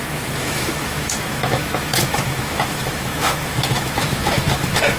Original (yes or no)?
no